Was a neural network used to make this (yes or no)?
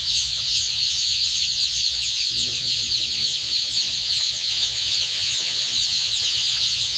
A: yes